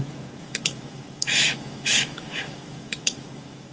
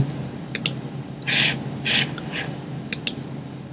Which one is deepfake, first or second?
first